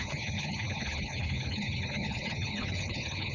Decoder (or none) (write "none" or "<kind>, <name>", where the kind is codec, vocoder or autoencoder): codec, HILCodec